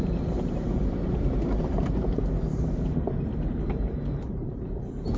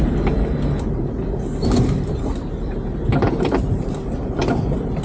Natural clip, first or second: second